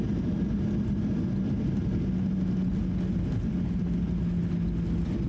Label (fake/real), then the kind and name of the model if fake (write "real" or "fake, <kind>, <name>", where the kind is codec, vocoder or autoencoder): real